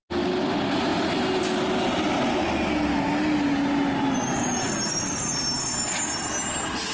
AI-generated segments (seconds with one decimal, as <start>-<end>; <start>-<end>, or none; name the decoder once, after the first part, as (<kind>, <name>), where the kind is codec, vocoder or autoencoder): none